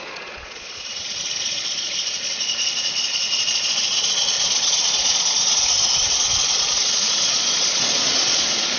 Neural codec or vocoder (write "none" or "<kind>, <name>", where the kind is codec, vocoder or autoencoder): vocoder, Vocos